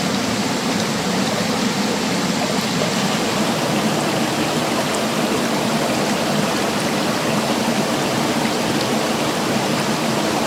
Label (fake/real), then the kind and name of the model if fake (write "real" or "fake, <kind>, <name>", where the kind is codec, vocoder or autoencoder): real